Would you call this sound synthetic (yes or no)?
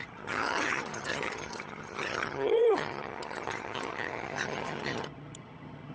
yes